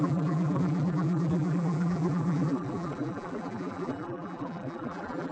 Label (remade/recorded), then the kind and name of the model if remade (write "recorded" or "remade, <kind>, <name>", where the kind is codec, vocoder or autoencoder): remade, vocoder, BigVGAN v2